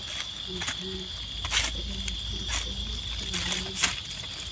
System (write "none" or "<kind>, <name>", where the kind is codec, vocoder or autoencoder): none